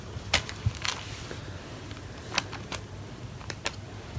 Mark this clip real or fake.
fake